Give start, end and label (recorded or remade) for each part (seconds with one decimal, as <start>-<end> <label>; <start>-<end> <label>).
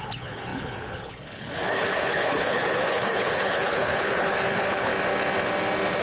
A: 0.0-4.9 remade; 4.9-6.0 recorded